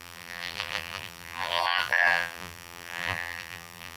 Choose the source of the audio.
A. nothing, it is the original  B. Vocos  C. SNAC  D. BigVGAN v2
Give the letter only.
D